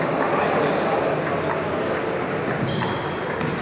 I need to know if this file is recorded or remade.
recorded